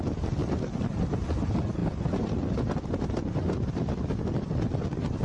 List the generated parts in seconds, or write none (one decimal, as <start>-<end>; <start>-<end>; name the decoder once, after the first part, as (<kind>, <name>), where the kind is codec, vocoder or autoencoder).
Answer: none